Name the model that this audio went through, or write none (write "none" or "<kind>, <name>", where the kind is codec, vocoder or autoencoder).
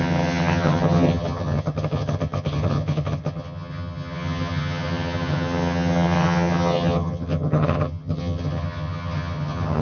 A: vocoder, HiFi-GAN